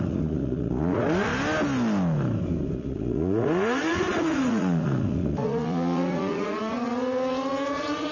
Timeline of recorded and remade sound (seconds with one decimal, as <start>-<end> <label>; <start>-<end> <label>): 0.0-1.3 remade; 1.3-2.8 recorded; 2.8-8.1 remade